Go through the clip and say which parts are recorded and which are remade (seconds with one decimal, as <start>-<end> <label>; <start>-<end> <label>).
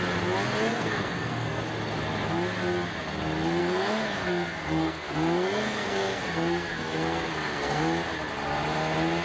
0.0-0.7 recorded; 0.7-1.6 remade; 1.6-3.6 recorded; 3.6-7.8 remade; 7.8-9.2 recorded